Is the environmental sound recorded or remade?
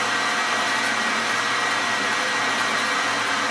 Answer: recorded